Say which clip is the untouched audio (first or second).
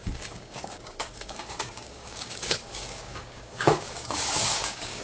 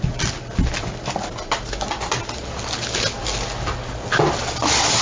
second